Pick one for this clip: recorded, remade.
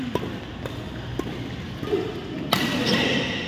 recorded